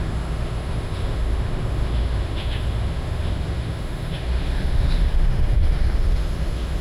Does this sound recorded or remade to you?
remade